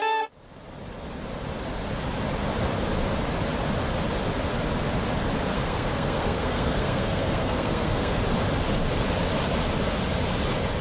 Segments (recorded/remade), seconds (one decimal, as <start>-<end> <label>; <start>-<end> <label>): 0.0-5.5 recorded; 5.5-8.2 remade; 8.2-10.8 recorded